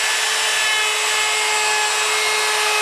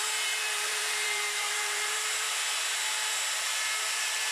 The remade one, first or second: second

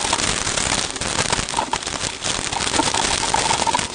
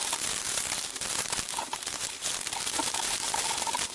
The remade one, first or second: second